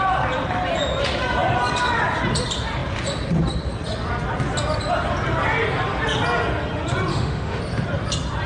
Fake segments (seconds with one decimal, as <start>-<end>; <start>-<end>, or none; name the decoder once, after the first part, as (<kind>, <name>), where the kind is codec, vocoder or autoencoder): 7.1-7.6 (autoencoder, DAC-VAE)